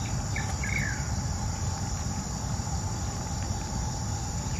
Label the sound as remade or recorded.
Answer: recorded